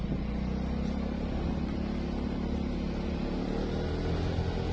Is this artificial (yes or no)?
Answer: no